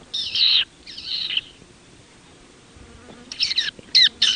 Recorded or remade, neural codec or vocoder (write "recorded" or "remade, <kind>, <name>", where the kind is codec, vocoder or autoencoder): remade, vocoder, BigVGAN v2